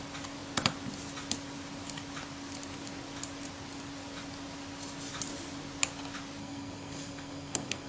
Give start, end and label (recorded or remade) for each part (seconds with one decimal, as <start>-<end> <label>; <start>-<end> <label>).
0.0-6.4 recorded; 6.4-7.9 remade